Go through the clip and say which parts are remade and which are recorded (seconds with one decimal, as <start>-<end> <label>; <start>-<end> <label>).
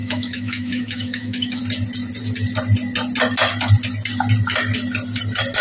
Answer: 0.0-1.6 remade; 1.6-5.6 recorded